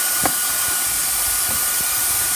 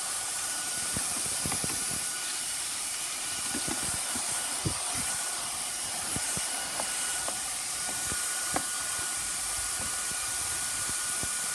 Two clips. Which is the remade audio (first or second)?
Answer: second